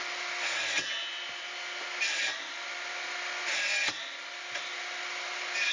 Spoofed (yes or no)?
no